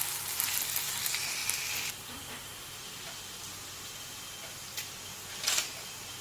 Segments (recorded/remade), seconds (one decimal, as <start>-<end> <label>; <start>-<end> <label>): 0.0-6.2 recorded